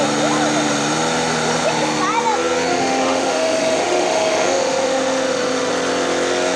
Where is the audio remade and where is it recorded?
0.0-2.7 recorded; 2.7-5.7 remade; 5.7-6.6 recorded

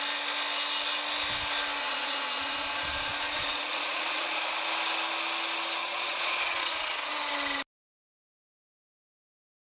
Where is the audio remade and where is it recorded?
0.0-1.8 recorded; 1.8-4.4 remade; 4.4-5.8 recorded; 5.8-7.1 remade; 7.1-9.7 recorded

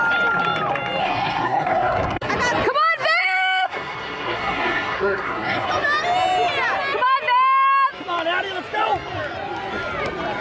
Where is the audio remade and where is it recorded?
0.0-1.0 recorded; 1.0-2.3 remade; 2.3-3.2 recorded; 3.2-5.7 remade; 5.7-10.4 recorded

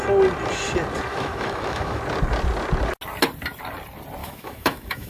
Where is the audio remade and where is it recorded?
0.0-1.1 recorded; 1.1-2.0 remade; 2.0-4.2 recorded; 4.2-5.1 remade

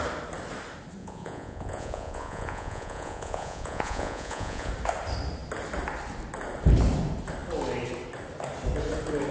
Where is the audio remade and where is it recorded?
0.0-1.0 recorded; 1.0-4.7 remade; 4.7-9.3 recorded

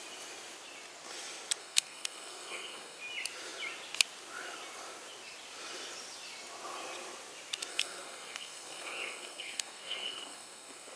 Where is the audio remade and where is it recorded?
0.0-1.6 recorded; 1.6-3.0 remade; 3.0-7.7 recorded; 7.7-11.0 remade